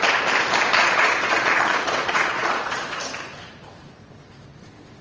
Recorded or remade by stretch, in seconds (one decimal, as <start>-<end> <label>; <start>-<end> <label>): 0.0-0.8 recorded; 0.8-3.0 remade; 3.0-5.0 recorded